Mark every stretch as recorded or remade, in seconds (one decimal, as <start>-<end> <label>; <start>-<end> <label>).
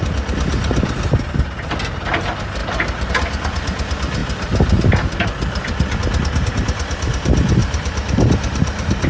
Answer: 0.0-2.6 recorded; 2.6-3.1 remade; 3.1-7.6 recorded; 7.6-9.1 remade